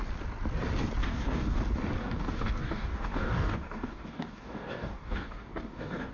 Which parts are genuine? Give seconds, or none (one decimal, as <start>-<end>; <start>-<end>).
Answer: 0.0-1.0; 1.6-2.0